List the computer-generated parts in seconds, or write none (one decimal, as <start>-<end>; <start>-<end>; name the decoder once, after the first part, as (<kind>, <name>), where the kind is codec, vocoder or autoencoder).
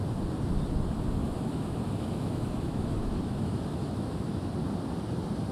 1.2-4.5 (autoencoder, DAC-VAE)